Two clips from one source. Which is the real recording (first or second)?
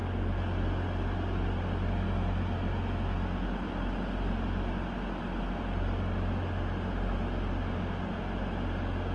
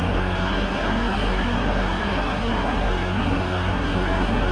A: first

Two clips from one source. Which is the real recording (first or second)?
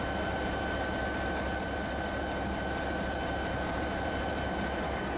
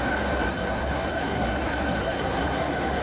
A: first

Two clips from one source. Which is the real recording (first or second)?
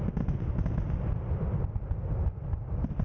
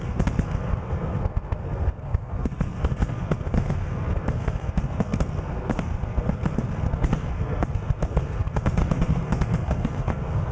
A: first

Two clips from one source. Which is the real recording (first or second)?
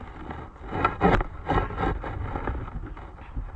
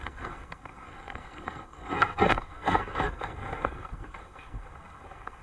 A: first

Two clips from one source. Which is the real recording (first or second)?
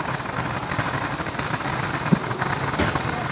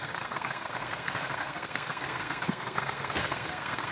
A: first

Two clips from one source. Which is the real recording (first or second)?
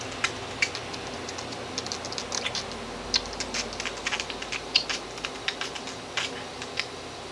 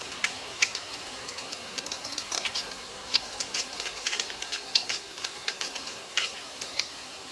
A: first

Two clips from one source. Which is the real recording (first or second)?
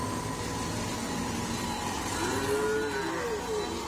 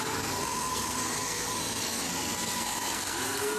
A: first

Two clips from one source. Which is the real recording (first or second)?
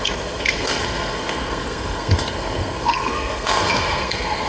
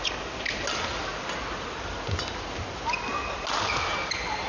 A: second